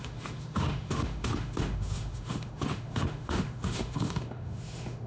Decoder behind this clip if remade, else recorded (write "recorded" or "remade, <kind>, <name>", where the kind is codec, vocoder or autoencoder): remade, autoencoder, DAC-VAE